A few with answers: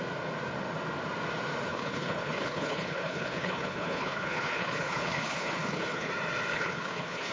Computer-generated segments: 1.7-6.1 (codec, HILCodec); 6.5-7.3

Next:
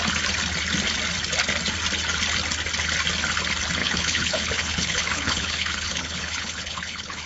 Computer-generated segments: 3.8-7.3 (codec, HILCodec)

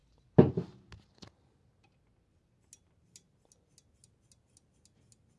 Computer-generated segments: none

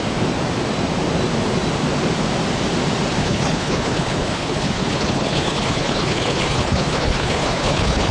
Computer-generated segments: 3.2-8.1 (codec, HILCodec)